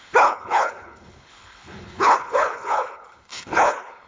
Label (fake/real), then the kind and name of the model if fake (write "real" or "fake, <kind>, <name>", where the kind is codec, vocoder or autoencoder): fake, codec, HILCodec